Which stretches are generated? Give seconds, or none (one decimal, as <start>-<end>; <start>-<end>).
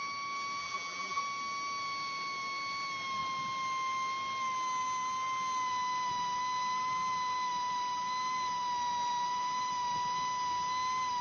0.6-1.2